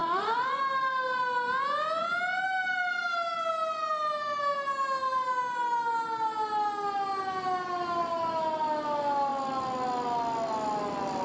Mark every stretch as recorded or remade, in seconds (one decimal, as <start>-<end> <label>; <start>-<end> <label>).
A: 0.0-0.6 remade; 0.6-11.2 recorded